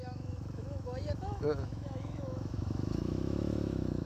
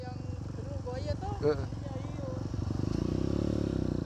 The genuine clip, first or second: second